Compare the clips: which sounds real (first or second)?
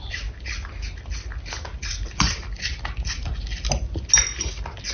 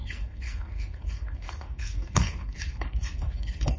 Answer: first